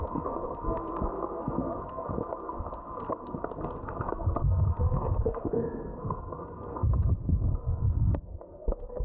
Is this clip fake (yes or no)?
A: yes